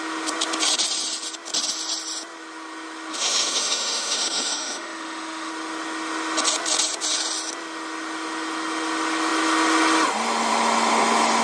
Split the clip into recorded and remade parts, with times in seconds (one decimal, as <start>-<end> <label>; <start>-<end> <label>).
0.0-3.1 recorded; 3.1-5.5 remade; 5.5-11.4 recorded